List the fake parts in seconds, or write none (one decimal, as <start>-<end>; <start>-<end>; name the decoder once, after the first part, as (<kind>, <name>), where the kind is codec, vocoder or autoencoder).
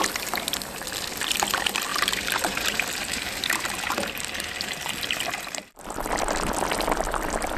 1.9-6.1 (vocoder, BigVGAN v2)